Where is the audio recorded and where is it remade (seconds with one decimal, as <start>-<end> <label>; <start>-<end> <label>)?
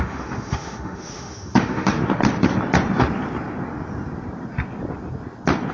0.0-2.0 remade; 2.0-5.7 recorded